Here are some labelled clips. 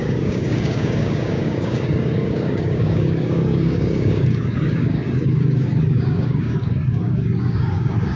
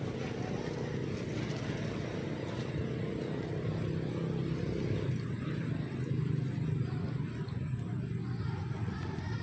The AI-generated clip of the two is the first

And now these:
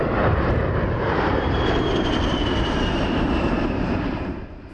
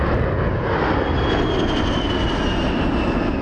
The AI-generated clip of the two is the first